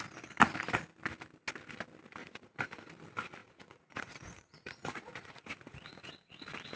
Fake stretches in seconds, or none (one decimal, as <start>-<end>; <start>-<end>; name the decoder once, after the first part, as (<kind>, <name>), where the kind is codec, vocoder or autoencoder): 2.2-2.9 (vocoder, Vocos); 3.4-6.1